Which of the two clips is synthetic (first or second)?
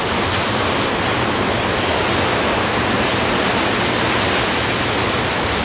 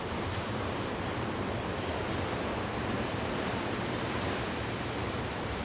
second